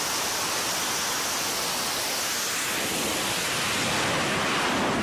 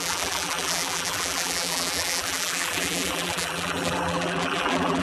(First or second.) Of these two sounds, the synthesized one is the second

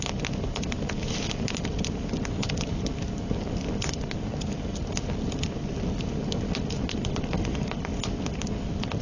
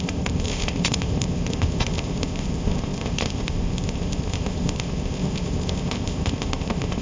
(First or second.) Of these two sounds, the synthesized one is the second